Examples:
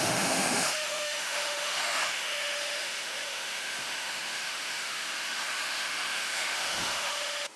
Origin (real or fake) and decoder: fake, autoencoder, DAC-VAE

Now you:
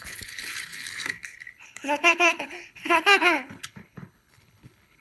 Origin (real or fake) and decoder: fake, codec, HILCodec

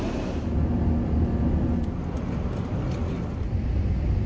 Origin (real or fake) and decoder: real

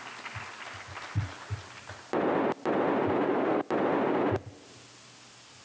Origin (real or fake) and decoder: real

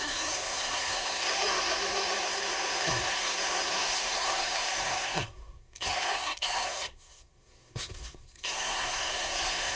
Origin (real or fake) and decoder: fake, codec, SNAC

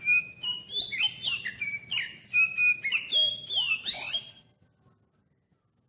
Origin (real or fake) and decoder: real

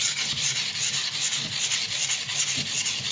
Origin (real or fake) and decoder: real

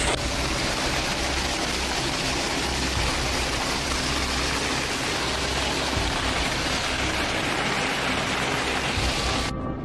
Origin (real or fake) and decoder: real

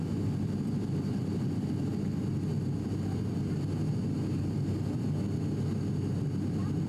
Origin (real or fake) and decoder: real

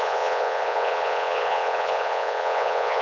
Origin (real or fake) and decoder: fake, vocoder, WaveNeXt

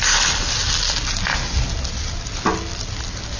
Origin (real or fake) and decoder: real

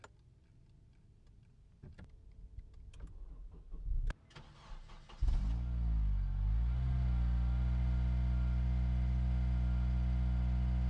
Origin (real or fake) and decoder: real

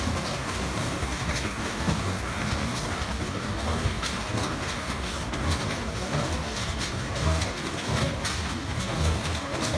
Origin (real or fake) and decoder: fake, codec, DAC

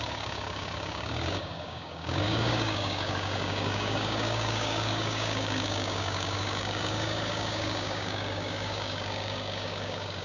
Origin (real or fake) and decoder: fake, codec, DAC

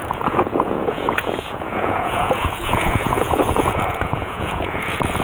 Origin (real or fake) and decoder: fake, vocoder, Vocos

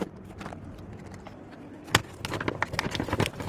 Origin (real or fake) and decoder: real